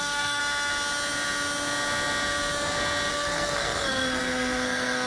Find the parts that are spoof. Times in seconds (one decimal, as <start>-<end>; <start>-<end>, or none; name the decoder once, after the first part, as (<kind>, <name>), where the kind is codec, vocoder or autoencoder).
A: 0.0-0.4 (codec, SNAC); 3.1-5.1